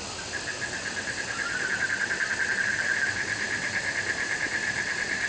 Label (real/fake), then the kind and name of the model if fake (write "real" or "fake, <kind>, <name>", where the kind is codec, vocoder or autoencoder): real